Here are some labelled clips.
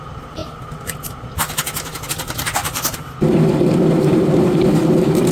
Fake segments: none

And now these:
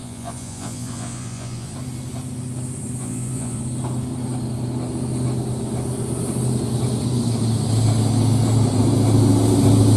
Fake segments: 0.0-1.7 (vocoder, Vocos); 3.0-3.6

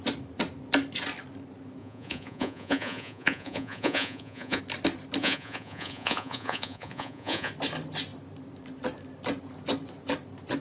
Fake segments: 1.8-4.6 (vocoder, Vocos); 5.2-7.5

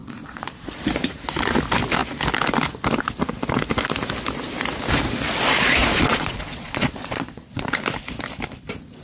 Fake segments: 0.0-0.8 (vocoder, Vocos); 5.8-7.8

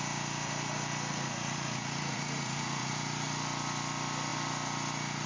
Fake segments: 1.1-2.9 (vocoder, Vocos)

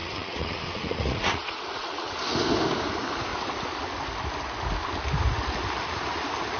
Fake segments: 0.0-2.2 (vocoder, Vocos)

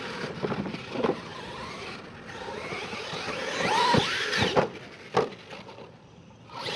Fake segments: none

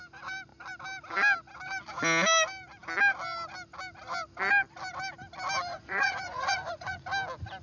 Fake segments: 5.7-7.0 (vocoder, Vocos)